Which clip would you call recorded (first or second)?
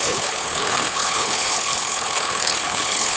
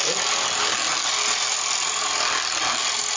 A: second